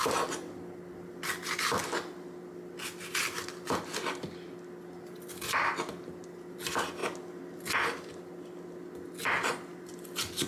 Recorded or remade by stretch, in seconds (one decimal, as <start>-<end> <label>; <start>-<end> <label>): 0.0-3.9 recorded; 3.9-4.5 remade; 4.5-10.5 recorded

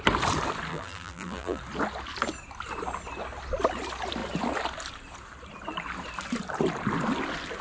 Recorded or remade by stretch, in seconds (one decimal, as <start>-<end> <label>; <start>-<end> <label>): 0.0-0.7 recorded; 0.7-1.6 remade; 1.6-7.6 recorded

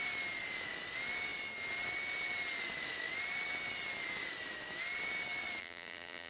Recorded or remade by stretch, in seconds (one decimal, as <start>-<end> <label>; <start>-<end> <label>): 0.0-5.6 recorded; 5.6-6.3 remade

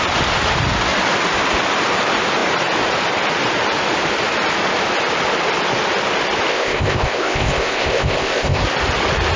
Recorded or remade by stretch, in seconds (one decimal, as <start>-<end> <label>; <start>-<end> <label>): 0.0-6.5 recorded; 6.5-8.6 remade; 8.6-9.4 recorded

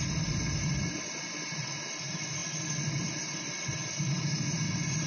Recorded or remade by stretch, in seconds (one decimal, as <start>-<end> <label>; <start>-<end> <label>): 0.0-5.1 recorded

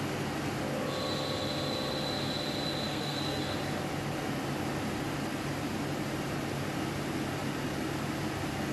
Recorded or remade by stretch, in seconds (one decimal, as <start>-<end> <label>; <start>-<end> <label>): 0.0-2.9 recorded; 2.9-3.4 remade; 3.4-8.7 recorded

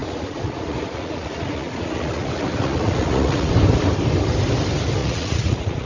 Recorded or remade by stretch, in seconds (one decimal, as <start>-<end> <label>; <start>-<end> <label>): 0.0-3.5 remade; 3.5-5.0 recorded; 5.0-5.9 remade

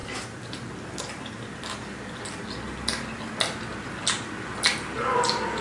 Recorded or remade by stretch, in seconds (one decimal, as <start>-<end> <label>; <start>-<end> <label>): 0.0-5.6 recorded